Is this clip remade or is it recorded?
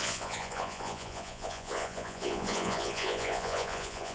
remade